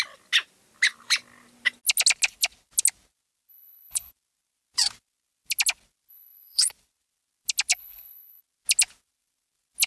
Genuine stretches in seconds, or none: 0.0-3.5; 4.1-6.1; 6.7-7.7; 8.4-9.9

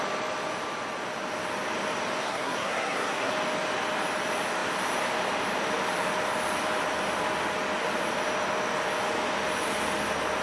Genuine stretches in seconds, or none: 0.0-2.2; 3.3-10.4

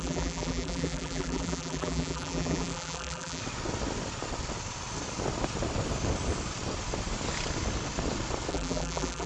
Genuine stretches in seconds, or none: 3.4-8.5

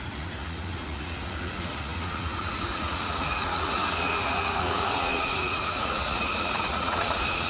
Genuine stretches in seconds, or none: none

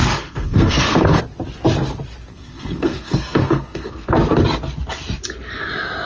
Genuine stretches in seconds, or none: 1.2-2.3; 4.1-6.1

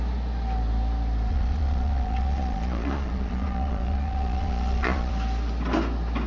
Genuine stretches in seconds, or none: 0.0-1.3; 5.1-6.3